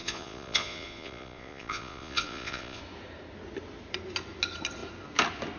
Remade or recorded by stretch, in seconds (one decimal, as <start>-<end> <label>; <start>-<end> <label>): 0.0-2.8 remade; 2.8-5.6 recorded